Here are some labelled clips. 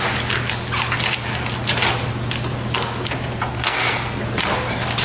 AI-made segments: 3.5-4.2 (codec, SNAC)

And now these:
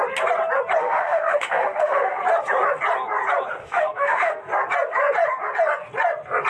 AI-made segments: 0.8-2.2 (autoencoder, DAC-VAE); 3.6-4.4